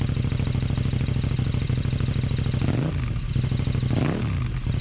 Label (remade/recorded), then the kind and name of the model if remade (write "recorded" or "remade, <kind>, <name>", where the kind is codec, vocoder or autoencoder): recorded